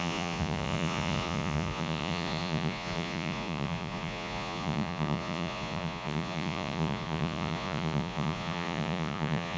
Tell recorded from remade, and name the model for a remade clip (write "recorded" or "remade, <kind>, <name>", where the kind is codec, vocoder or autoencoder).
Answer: remade, vocoder, Vocos